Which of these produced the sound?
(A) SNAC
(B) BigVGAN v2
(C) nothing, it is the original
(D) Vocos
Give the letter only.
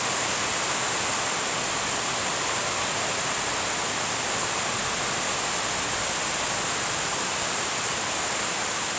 C